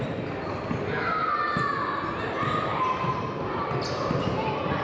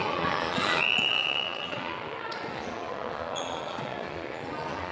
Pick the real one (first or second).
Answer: first